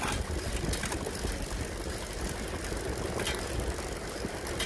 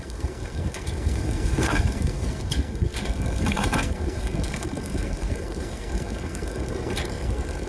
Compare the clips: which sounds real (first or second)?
first